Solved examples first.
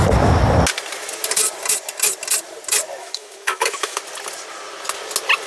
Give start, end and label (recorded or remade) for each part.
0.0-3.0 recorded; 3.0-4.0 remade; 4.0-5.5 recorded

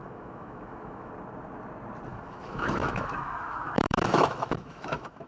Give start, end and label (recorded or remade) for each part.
0.0-1.1 remade; 1.1-2.1 recorded; 2.1-5.3 remade

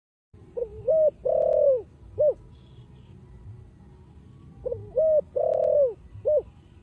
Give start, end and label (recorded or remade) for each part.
0.0-6.8 recorded

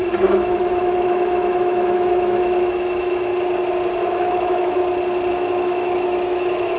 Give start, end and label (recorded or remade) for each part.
0.0-3.3 remade; 3.3-4.1 recorded; 4.1-4.8 remade; 4.8-5.3 recorded; 5.3-6.8 remade